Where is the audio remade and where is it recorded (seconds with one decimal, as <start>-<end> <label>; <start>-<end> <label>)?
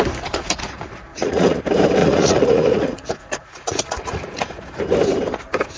0.0-1.1 recorded; 1.1-1.6 remade; 1.6-2.0 recorded; 2.0-4.8 remade; 4.8-5.8 recorded